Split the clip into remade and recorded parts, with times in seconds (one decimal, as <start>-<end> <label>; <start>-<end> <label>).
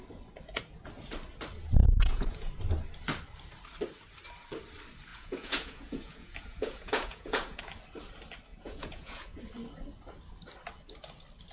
0.0-1.8 recorded; 1.8-2.5 remade; 2.5-5.1 recorded; 5.1-7.6 remade; 7.6-8.5 recorded; 8.5-9.4 remade; 9.4-11.5 recorded